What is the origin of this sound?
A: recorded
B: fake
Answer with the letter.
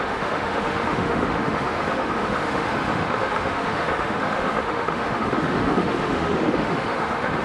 B